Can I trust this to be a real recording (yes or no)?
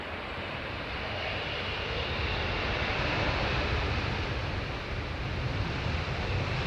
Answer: yes